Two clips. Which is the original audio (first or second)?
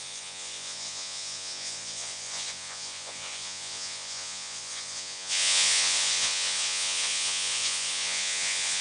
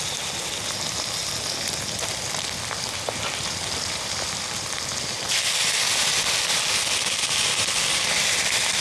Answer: second